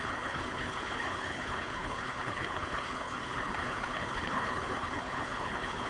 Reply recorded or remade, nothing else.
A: remade